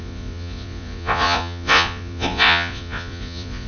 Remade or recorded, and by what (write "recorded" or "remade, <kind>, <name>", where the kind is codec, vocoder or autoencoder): remade, vocoder, Vocos